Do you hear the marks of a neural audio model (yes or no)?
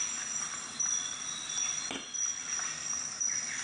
no